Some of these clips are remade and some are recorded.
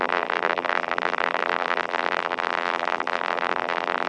remade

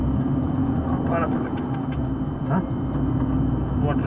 recorded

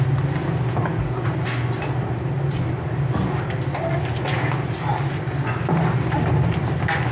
recorded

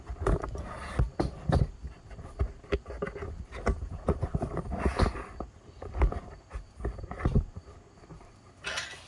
recorded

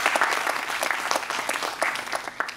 recorded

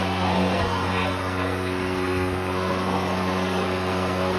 remade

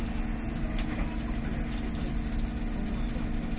recorded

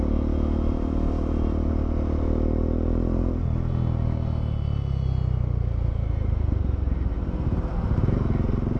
recorded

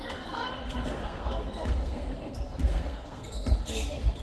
remade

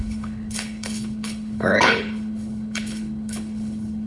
remade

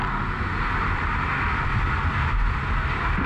recorded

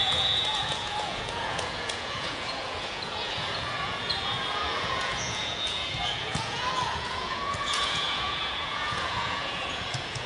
remade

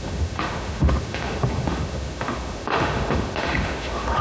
remade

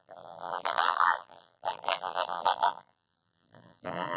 remade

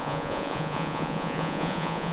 remade